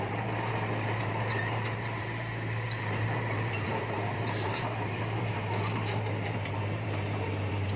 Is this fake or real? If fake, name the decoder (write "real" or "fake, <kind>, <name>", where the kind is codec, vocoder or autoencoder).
fake, vocoder, BigVGAN v2